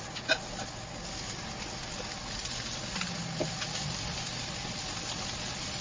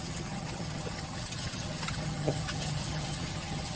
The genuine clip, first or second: first